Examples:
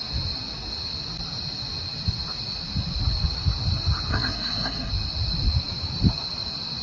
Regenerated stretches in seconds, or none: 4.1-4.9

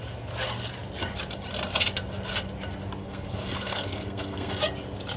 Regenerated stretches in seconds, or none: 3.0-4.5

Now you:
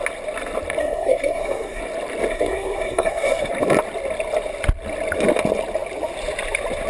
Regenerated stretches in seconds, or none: 0.8-1.8; 2.3-3.5

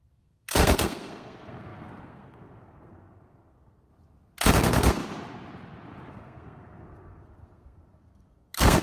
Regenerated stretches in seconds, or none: 0.0-3.9; 4.5-5.0; 6.1-8.8

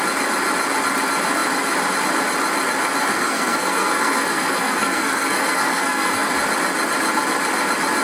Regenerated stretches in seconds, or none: 3.0-6.3

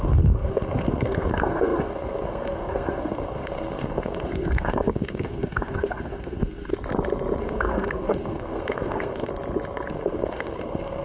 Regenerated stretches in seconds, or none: 0.0-6.7; 7.4-9.3; 9.9-11.0